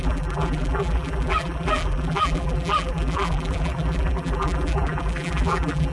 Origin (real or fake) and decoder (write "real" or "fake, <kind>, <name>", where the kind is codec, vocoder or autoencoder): fake, vocoder, BigVGAN v2